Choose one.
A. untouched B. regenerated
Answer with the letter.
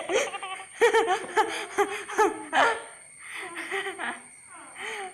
A